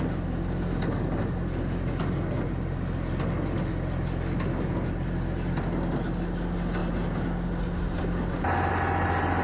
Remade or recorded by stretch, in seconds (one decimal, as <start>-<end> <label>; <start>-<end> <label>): 0.0-9.4 recorded